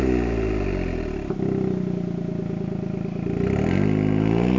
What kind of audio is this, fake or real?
real